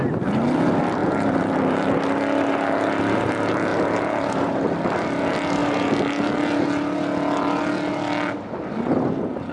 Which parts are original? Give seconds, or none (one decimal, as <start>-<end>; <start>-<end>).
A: 0.0-1.0; 2.0-3.7; 4.6-9.5